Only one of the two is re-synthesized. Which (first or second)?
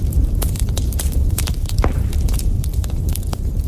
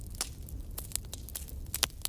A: first